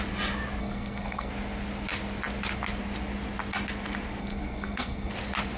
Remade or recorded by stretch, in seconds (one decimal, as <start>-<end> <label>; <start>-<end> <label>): 0.0-0.6 recorded; 0.6-1.3 remade; 1.3-4.2 recorded; 4.2-5.1 remade; 5.1-5.6 recorded